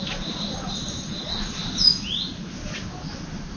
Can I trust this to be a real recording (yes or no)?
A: yes